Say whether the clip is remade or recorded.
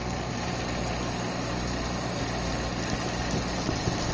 recorded